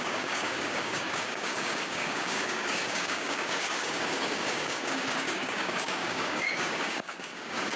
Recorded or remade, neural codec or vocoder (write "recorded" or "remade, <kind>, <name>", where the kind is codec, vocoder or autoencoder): remade, codec, DAC